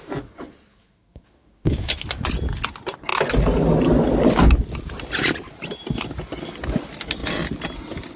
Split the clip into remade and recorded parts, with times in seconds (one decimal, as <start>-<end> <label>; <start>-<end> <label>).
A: 0.0-0.7 recorded; 0.7-1.9 remade; 1.9-8.2 recorded